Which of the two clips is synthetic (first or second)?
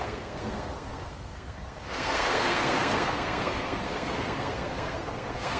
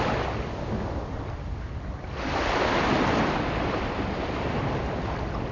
first